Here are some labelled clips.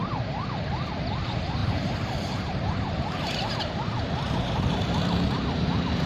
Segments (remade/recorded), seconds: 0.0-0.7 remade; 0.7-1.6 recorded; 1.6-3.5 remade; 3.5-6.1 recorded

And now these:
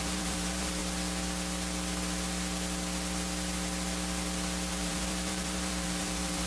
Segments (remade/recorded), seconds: 0.0-0.8 remade; 0.8-4.7 recorded; 4.7-6.5 remade

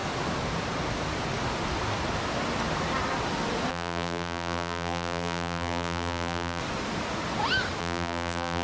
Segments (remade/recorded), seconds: 0.0-3.7 recorded; 3.7-6.6 remade; 6.6-7.8 recorded; 7.8-8.6 remade

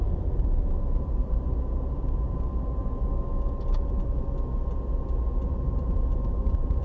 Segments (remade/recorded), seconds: 0.0-2.8 remade; 2.8-5.5 recorded; 5.5-6.8 remade